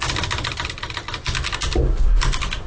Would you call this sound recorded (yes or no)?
yes